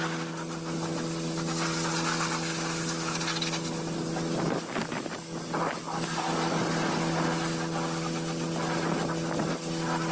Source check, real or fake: real